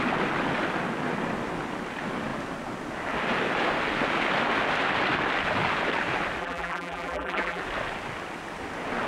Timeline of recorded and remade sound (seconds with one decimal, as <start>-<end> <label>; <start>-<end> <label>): 0.0-6.4 recorded; 6.4-7.6 remade; 7.6-9.1 recorded